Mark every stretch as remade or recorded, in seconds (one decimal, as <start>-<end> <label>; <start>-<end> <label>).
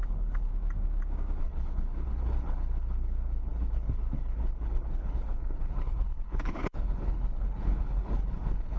0.0-0.5 remade; 0.5-1.4 recorded; 1.4-8.8 remade